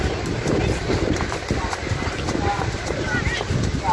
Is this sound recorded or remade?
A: recorded